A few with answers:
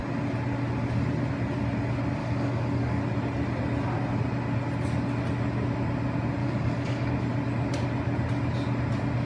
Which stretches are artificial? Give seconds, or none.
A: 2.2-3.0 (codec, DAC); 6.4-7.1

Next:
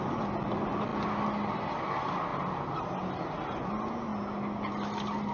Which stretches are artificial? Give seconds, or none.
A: none

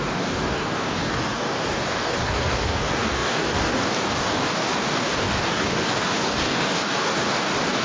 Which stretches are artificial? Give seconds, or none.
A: 0.0-7.8 (codec, DAC)

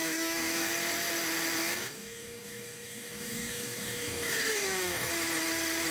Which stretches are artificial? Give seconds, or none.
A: 0.0-0.7 (codec, DAC); 1.6-5.1

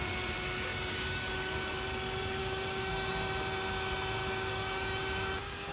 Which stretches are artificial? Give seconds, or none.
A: 0.7-1.3 (codec, DAC); 2.4-3.1; 4.2-5.7